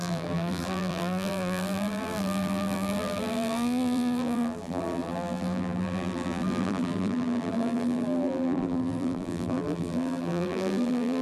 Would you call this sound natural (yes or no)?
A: no